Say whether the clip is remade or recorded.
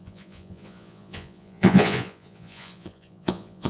remade